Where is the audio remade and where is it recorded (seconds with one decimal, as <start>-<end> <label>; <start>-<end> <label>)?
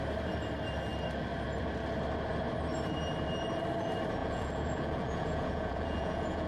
0.0-4.2 recorded; 4.2-6.5 remade